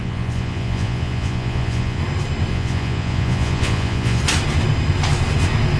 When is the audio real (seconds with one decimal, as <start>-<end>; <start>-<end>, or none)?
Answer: 2.0-2.5; 4.2-5.8